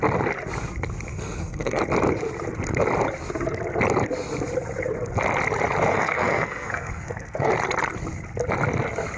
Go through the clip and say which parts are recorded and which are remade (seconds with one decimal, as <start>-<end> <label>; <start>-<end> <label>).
0.0-1.1 recorded; 1.1-1.8 remade; 1.8-5.9 recorded; 5.9-7.5 remade; 7.5-9.2 recorded